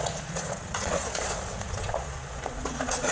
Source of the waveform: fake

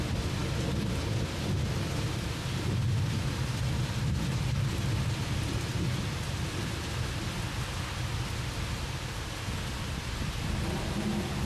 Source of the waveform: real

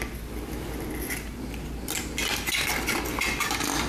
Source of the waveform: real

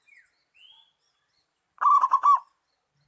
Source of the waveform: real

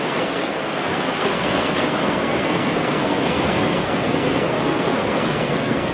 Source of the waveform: fake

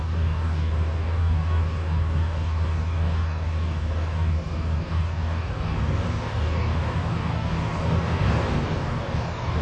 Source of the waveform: fake